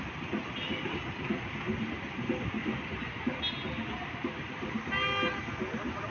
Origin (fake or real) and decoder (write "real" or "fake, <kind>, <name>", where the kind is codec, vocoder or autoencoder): real